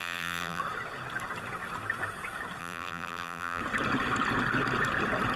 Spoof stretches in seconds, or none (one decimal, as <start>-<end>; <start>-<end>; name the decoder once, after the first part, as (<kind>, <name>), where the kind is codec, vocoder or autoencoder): 0.0-0.6 (vocoder, BigVGAN v2); 2.6-3.6